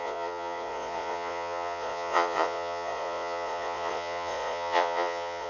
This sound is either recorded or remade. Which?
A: remade